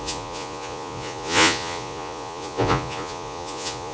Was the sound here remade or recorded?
remade